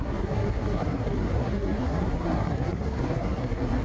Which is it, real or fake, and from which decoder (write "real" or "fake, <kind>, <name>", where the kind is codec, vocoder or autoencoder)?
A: fake, codec, SNAC